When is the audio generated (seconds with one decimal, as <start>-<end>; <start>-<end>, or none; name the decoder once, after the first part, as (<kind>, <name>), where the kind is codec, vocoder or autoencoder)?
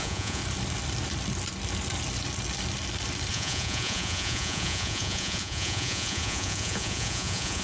0.0-0.4 (vocoder, Vocos); 3.3-7.6